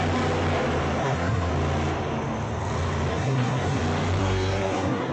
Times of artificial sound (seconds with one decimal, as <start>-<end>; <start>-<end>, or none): 1.0-1.5; 3.1-3.8; 4.2-5.1